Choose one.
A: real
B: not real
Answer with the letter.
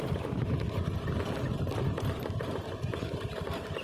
B